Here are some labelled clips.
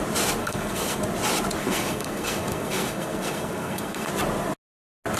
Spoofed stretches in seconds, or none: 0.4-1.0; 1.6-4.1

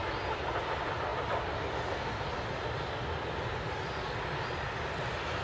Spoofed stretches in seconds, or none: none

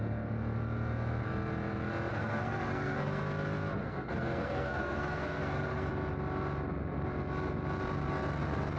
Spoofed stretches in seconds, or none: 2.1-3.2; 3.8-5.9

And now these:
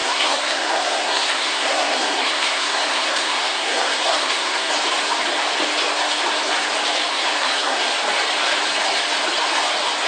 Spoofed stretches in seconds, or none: 0.0-4.7; 7.1-7.9

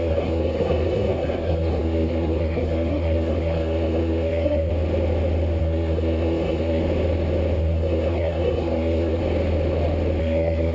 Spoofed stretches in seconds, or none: 0.0-4.7; 5.6-6.8; 7.6-9.2; 10.2-10.7

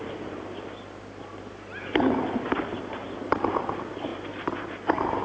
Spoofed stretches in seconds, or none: none

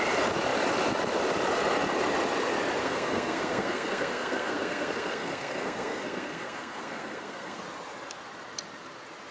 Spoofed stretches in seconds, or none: 2.8-7.6

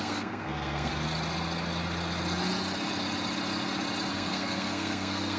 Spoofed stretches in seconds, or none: 0.0-0.9; 4.1-5.4